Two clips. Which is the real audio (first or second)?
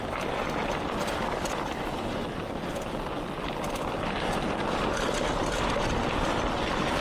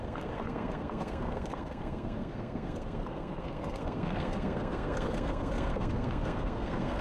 first